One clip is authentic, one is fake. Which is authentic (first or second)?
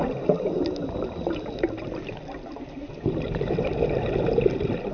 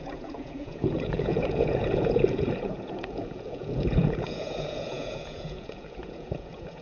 first